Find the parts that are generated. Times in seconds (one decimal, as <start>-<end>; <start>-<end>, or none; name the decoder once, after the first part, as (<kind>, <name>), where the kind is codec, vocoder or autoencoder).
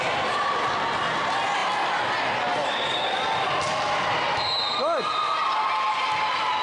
none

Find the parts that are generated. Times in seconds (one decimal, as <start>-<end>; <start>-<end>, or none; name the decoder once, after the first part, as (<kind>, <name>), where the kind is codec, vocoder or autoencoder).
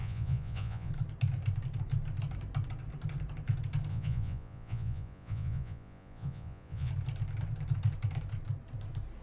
0.0-0.9 (vocoder, Vocos); 3.9-6.9